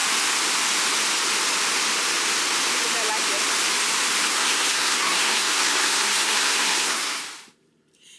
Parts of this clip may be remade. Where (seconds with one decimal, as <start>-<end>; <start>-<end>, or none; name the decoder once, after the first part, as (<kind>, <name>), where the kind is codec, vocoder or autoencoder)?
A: 4.3-7.2 (codec, SNAC)